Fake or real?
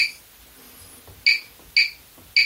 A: real